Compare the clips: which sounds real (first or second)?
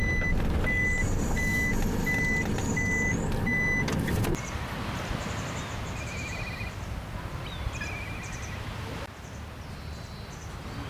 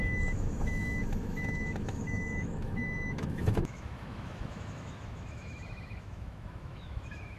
first